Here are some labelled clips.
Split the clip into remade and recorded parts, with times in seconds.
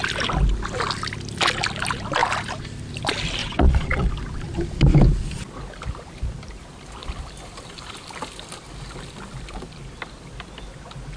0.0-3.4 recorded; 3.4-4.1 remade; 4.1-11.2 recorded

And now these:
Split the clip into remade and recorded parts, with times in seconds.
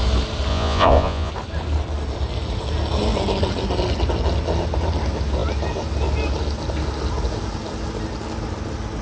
0.0-0.5 recorded; 0.5-1.3 remade; 1.3-9.0 recorded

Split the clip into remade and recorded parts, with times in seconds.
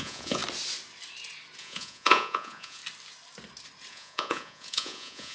0.0-0.4 remade; 0.4-1.6 recorded; 1.6-2.8 remade; 2.8-3.9 recorded; 3.9-5.3 remade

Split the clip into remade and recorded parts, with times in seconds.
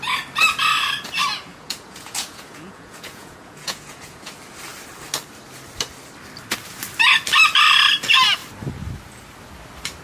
0.0-1.5 recorded; 1.5-4.3 remade; 4.3-10.0 recorded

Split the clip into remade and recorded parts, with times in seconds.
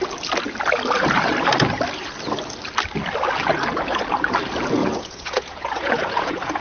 0.0-4.8 recorded; 4.8-6.6 remade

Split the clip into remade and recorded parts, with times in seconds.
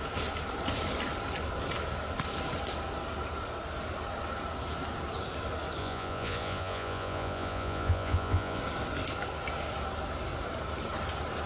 0.0-5.8 recorded; 5.8-8.6 remade; 8.6-11.5 recorded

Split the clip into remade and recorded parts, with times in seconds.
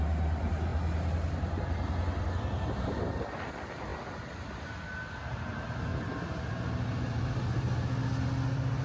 0.0-8.8 recorded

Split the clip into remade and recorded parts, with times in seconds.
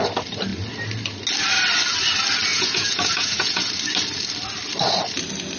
0.0-2.5 recorded; 2.5-3.7 remade; 3.7-5.6 recorded